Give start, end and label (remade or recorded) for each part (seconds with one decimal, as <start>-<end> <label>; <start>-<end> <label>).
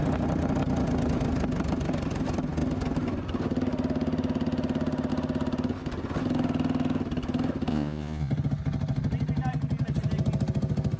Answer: 0.0-7.7 recorded; 7.7-8.3 remade; 8.3-11.0 recorded